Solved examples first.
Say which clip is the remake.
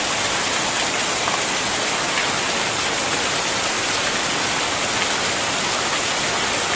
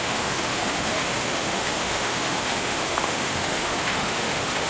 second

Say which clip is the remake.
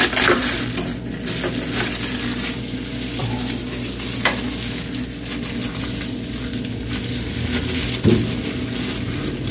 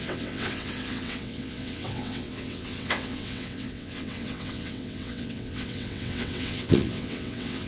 second